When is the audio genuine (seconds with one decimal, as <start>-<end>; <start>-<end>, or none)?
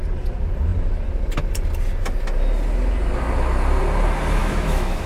0.0-4.4